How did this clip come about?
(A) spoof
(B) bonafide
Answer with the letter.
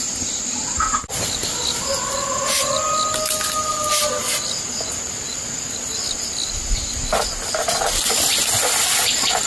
B